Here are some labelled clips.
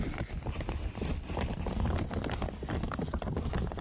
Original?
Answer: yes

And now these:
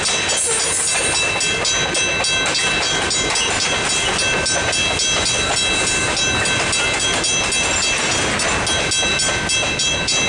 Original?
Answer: yes